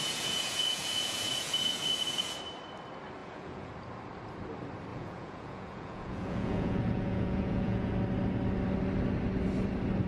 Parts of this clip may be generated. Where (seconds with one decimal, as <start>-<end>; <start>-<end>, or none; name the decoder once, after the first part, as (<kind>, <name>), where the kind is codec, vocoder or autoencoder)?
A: 0.0-2.4 (vocoder, Vocos); 3.2-3.7; 4.9-7.9